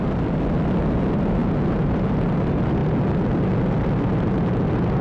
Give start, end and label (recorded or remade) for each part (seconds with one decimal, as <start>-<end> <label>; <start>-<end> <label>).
0.0-5.0 recorded